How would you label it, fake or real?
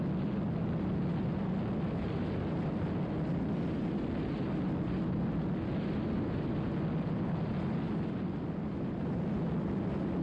real